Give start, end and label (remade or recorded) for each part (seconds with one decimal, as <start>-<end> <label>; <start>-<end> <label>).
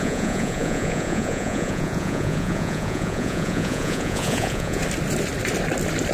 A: 0.0-4.8 remade; 4.8-6.1 recorded